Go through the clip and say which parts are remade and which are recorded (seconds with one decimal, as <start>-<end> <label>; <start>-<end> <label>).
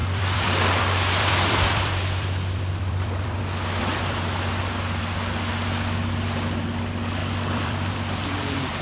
0.0-3.4 remade; 3.4-3.9 recorded; 3.9-4.6 remade; 4.6-7.2 recorded; 7.2-8.8 remade